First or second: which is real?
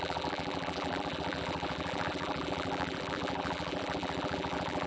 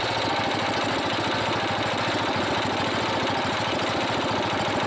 second